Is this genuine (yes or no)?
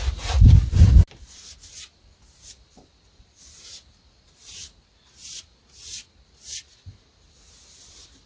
yes